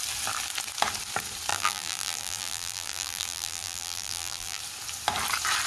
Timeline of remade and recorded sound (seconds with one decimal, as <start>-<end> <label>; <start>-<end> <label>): 0.0-1.5 recorded; 1.5-4.6 remade; 4.6-5.7 recorded